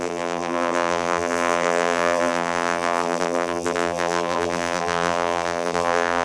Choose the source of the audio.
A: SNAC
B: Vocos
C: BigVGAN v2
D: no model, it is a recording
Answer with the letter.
C